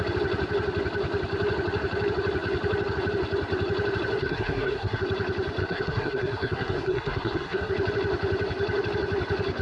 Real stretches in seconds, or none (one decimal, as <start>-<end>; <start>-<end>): 0.0-4.2; 5.0-5.6; 7.7-9.6